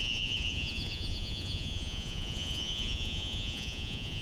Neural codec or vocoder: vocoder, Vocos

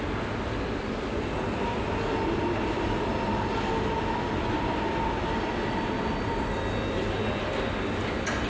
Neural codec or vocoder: none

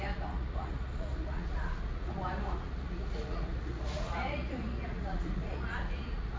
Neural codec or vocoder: vocoder, Vocos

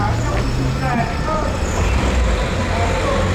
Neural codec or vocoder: none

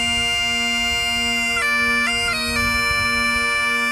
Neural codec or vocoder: none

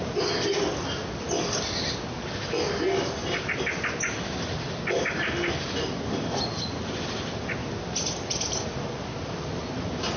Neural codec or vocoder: none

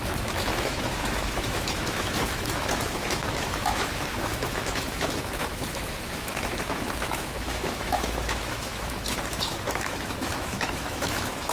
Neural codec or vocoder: autoencoder, DAC-VAE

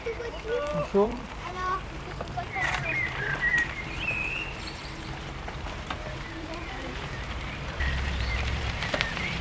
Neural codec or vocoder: vocoder, BigVGAN v2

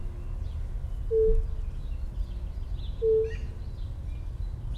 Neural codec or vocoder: none